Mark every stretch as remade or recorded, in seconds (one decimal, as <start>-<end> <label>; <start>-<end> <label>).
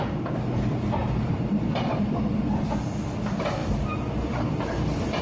0.0-1.0 recorded; 1.0-2.5 remade; 2.5-3.6 recorded; 3.6-5.2 remade